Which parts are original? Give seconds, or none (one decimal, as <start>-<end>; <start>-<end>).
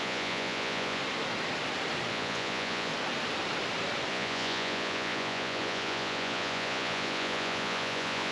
1.0-2.1; 2.9-4.1